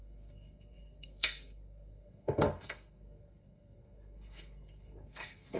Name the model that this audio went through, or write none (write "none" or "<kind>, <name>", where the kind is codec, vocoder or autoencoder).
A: codec, SNAC